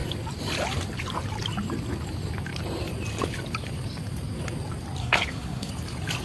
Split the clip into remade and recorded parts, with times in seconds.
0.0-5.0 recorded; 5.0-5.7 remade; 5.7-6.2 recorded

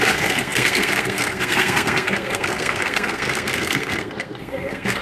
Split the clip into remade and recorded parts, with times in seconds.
0.0-5.0 remade

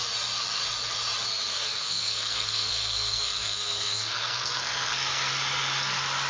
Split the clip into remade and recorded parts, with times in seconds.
0.0-1.5 recorded; 1.5-5.3 remade; 5.3-6.3 recorded

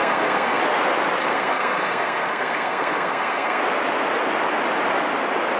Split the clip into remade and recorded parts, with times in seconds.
0.0-0.6 remade; 0.6-1.2 recorded; 1.2-3.6 remade; 3.6-5.6 recorded

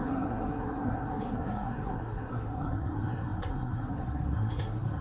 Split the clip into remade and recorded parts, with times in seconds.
0.0-5.0 remade